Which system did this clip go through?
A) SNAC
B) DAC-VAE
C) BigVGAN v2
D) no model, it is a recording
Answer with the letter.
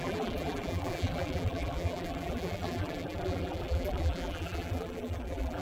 C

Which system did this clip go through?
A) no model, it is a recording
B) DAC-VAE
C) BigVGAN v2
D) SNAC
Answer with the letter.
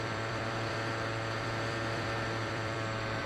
C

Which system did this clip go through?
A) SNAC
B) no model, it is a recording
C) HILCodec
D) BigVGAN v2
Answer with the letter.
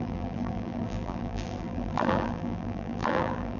D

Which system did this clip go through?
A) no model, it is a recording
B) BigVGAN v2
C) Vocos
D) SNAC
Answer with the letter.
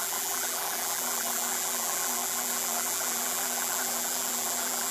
B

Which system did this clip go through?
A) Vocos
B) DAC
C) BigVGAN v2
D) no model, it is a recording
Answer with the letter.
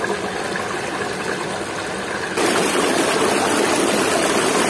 D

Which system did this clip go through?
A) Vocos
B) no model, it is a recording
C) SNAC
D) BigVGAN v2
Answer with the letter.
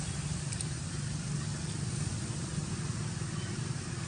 B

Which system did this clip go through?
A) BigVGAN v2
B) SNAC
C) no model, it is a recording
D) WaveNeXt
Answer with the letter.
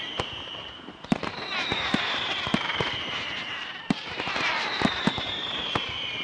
A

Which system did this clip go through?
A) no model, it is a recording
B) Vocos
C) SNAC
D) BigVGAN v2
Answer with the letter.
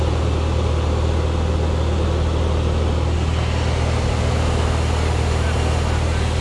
A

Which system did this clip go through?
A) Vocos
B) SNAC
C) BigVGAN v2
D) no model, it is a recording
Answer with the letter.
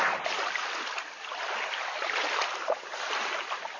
C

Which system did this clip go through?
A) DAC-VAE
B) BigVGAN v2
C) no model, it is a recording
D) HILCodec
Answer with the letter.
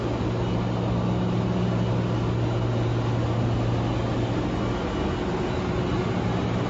C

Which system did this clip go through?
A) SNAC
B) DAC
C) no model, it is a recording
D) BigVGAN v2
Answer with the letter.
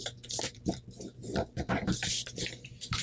D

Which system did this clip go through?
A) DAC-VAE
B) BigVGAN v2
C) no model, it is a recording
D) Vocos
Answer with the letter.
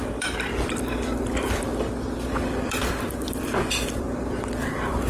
B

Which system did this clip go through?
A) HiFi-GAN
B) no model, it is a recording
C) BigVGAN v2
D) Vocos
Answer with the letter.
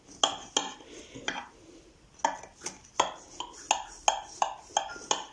B